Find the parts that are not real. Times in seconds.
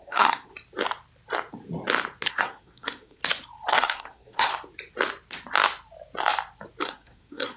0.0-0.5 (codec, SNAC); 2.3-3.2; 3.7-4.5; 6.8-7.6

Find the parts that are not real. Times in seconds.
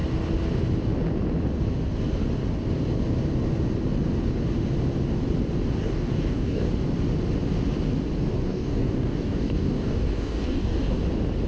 5.8-6.7 (codec, DAC); 8.4-11.0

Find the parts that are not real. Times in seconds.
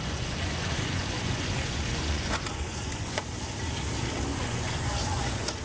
0.0-3.4 (vocoder, Vocos); 4.3-5.6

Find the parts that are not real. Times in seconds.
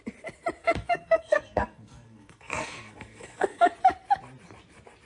0.6-3.7 (codec, SNAC)